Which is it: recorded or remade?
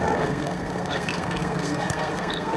remade